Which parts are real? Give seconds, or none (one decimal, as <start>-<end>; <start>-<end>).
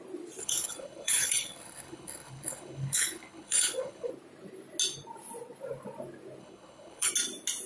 0.0-0.4; 4.1-6.4; 7.1-7.7